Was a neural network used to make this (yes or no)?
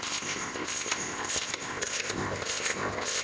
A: yes